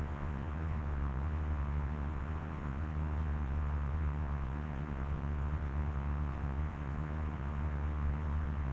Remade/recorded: remade